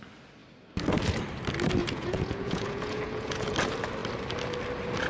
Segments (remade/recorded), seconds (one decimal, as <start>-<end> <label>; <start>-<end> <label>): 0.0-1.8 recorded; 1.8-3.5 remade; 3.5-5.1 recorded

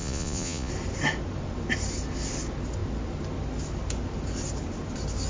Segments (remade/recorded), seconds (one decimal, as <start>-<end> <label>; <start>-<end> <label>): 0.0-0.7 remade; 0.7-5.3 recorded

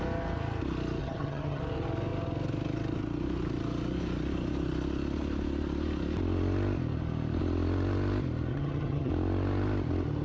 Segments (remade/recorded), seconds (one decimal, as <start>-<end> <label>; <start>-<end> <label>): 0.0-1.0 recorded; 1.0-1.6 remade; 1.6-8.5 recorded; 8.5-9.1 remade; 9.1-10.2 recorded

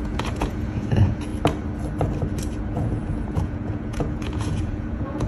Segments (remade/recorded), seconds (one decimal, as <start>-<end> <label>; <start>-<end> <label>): 0.0-1.3 remade; 1.3-2.6 recorded; 2.6-5.3 remade

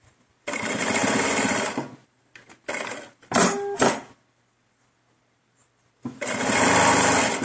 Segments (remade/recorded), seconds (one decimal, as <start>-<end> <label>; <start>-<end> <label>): 0.0-7.4 recorded

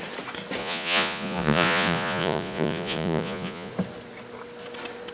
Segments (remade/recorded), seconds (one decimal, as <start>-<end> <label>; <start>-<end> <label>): 0.0-0.6 recorded; 0.6-3.7 remade; 3.7-5.1 recorded

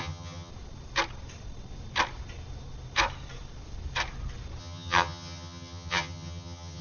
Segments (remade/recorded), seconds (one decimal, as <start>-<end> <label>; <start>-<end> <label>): 0.0-0.5 remade; 0.5-4.6 recorded; 4.6-6.8 remade

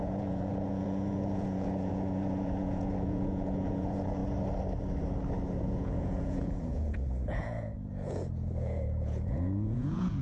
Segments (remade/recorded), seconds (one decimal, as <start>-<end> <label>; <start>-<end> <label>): 0.0-4.2 remade; 4.2-5.6 recorded; 5.6-10.2 remade